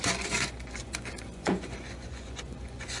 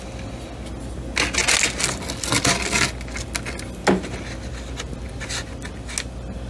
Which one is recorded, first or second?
second